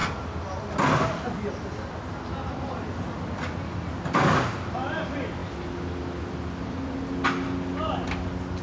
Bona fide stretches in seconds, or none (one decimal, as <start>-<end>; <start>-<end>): 0.0-8.6